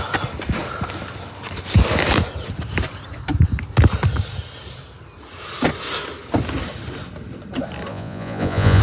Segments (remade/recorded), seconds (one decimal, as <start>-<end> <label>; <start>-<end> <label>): 0.0-7.9 recorded; 7.9-8.8 remade